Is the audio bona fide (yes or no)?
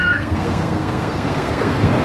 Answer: no